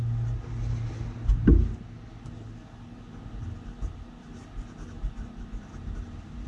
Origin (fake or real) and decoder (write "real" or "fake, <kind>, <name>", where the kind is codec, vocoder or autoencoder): real